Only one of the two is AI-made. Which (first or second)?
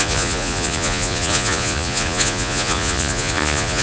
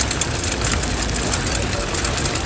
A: first